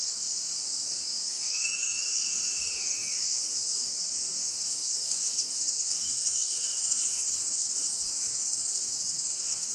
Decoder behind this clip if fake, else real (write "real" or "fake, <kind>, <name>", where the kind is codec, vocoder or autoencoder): fake, codec, DAC